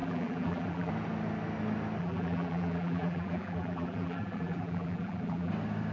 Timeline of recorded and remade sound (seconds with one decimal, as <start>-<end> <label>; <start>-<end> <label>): 0.0-0.9 remade; 0.9-2.0 recorded; 2.0-5.5 remade; 5.5-5.9 recorded